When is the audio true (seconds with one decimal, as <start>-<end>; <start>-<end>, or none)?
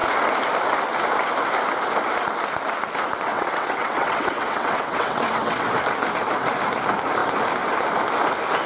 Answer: 0.0-3.3; 5.7-8.7